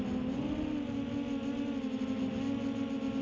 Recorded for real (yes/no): yes